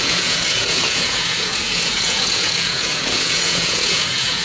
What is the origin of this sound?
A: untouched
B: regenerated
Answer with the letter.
B